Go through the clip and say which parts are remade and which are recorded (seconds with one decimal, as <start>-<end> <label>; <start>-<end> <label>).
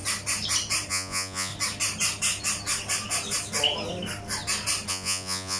0.0-0.9 recorded; 0.9-1.5 remade; 1.5-4.9 recorded; 4.9-5.6 remade